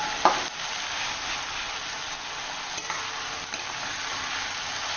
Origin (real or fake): real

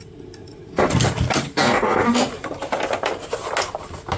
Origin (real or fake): real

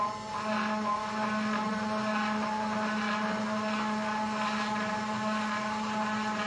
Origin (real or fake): real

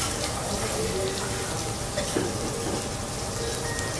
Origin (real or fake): real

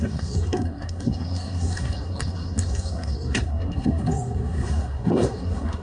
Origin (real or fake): fake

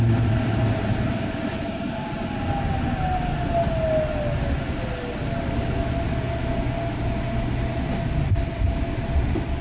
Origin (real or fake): real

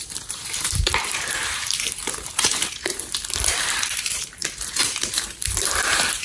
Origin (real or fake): fake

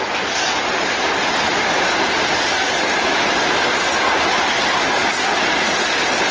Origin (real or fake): real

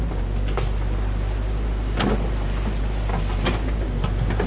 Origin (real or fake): real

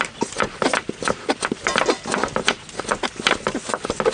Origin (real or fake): real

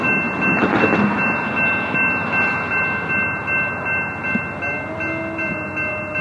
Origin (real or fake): real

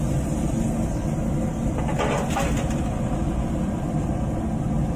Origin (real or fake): real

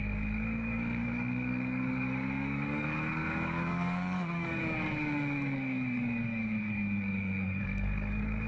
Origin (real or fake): fake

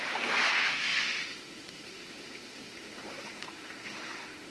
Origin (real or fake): fake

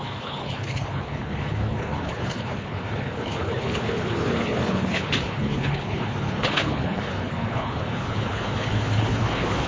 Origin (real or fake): fake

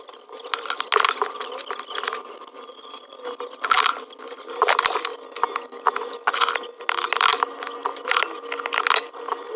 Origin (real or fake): real